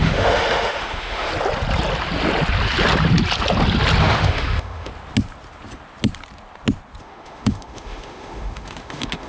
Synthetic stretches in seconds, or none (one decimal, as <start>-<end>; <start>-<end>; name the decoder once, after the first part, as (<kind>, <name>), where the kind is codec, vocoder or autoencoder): 0.0-1.3 (autoencoder, DAC-VAE); 4.0-4.9; 7.0-9.3